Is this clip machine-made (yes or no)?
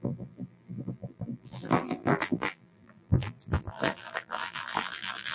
yes